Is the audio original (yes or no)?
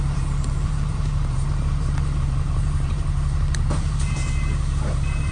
no